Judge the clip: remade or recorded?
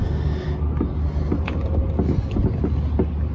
recorded